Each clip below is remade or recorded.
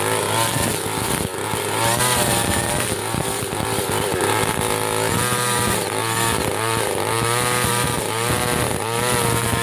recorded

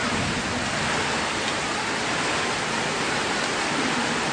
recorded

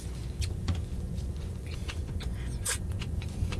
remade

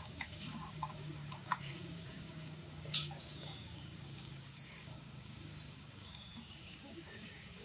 remade